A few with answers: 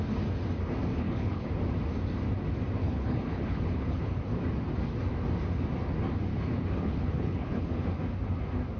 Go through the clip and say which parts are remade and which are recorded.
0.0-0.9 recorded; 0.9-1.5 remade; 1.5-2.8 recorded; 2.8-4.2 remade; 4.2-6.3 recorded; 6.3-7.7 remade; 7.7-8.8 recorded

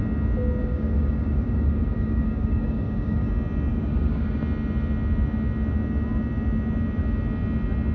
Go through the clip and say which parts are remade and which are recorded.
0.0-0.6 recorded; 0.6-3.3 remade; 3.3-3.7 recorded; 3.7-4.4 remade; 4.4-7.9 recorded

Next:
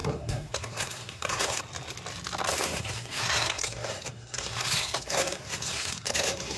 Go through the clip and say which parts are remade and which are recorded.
0.0-1.6 remade; 1.6-2.5 recorded; 2.5-6.6 remade